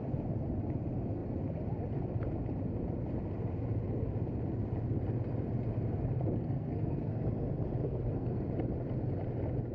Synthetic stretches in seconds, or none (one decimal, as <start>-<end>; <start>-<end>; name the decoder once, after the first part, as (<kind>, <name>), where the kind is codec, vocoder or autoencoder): 6.4-7.1 (codec, SNAC); 7.8-8.5